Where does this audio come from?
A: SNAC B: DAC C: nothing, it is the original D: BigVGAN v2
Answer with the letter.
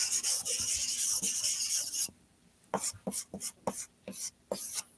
C